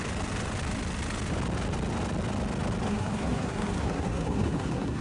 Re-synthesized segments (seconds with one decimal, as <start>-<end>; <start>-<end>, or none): 2.9-5.0